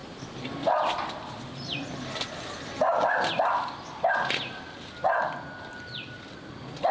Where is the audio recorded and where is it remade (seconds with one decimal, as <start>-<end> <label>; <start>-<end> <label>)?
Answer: 0.0-6.9 recorded